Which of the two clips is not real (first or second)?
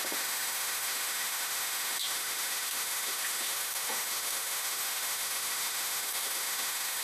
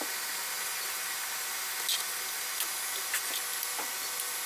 first